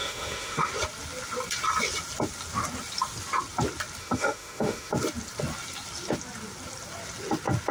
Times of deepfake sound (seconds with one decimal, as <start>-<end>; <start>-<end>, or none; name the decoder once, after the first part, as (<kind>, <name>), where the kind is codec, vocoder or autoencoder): 0.0-0.7 (autoencoder, DAC-VAE); 4.0-4.9